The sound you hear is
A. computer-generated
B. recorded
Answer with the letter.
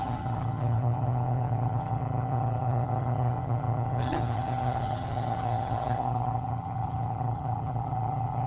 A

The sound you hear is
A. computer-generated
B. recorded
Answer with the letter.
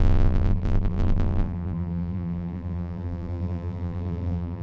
A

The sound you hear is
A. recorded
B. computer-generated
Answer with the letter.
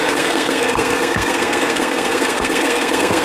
B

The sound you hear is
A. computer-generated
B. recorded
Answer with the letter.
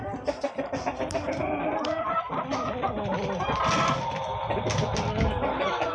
B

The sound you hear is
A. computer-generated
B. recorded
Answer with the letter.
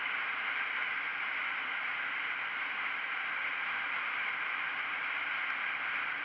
A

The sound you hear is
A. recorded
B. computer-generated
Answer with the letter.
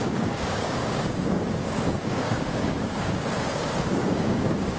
B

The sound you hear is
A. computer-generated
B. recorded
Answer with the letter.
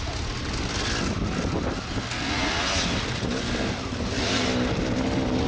B